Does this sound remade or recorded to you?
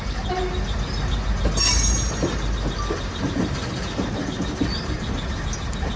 recorded